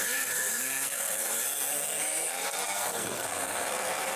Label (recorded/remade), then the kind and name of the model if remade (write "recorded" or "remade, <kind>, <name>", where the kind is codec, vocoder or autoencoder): remade, codec, SNAC